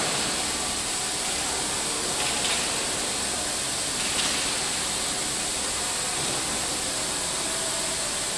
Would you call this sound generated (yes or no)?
no